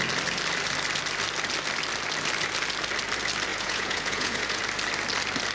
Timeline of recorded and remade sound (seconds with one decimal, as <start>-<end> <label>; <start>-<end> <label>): 0.0-3.5 recorded; 3.5-4.6 remade; 4.6-5.5 recorded